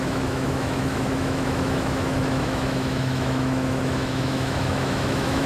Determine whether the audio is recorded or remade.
remade